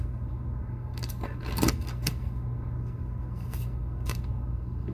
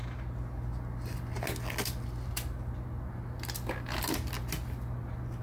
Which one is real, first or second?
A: second